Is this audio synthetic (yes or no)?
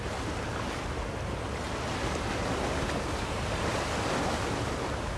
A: no